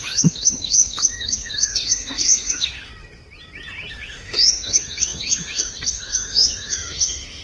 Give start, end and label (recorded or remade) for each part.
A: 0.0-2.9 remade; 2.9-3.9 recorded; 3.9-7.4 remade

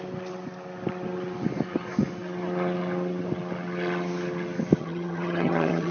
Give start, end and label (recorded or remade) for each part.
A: 0.0-4.8 recorded; 4.8-5.9 remade

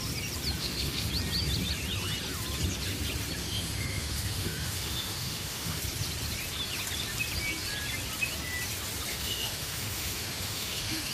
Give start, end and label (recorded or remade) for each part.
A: 0.0-0.6 recorded; 0.6-1.1 remade; 1.1-3.4 recorded; 3.4-5.8 remade; 5.8-9.1 recorded; 9.1-11.1 remade